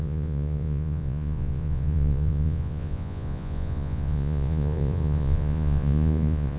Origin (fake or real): fake